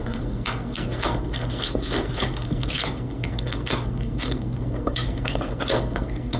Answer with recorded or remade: remade